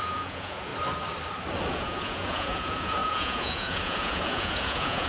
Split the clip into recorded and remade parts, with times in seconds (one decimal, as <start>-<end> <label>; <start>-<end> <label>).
0.0-0.7 remade; 0.7-1.7 recorded; 1.7-5.1 remade